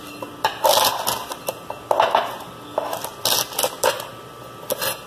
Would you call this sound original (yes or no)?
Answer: yes